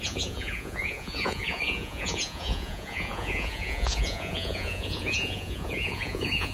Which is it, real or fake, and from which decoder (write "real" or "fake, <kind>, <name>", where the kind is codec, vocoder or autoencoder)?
fake, vocoder, Vocos